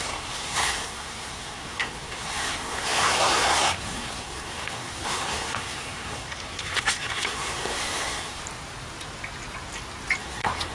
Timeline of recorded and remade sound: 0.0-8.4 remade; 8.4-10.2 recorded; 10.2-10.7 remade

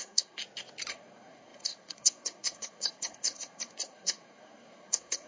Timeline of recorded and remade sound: 0.0-0.4 remade; 0.4-0.9 recorded; 0.9-5.3 remade

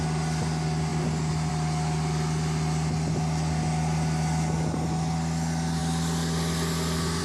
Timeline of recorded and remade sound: 0.0-7.2 recorded

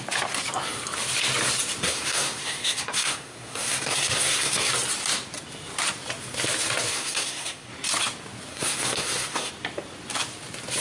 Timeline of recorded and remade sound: 0.0-1.8 recorded; 1.8-4.7 remade; 4.7-6.9 recorded; 6.9-7.7 remade; 7.7-8.5 recorded; 8.5-9.5 remade; 9.5-10.8 recorded

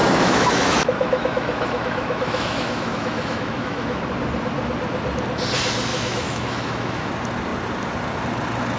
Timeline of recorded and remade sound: 0.0-4.0 remade; 4.0-5.9 recorded; 5.9-7.1 remade; 7.1-8.8 recorded

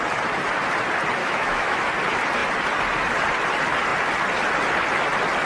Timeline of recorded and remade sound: 0.0-1.2 recorded; 1.2-1.9 remade; 1.9-5.5 recorded

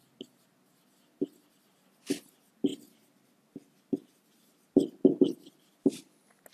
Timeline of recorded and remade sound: 0.0-2.7 recorded; 2.7-5.9 remade; 5.9-6.5 recorded